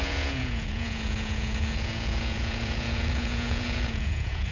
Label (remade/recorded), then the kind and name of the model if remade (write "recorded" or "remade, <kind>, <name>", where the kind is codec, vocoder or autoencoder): remade, vocoder, Vocos